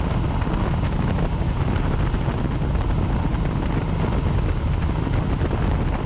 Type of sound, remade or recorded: recorded